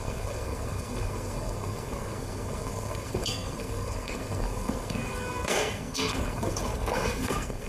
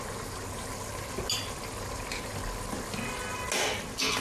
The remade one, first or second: first